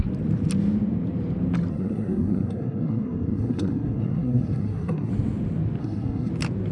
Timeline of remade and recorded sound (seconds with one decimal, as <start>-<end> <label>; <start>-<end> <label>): 0.0-1.7 recorded; 1.7-5.1 remade; 5.1-5.8 recorded; 5.8-6.3 remade; 6.3-6.7 recorded